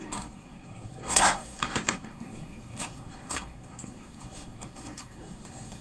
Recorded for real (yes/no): no